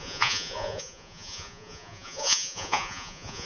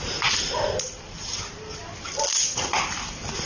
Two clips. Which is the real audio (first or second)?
second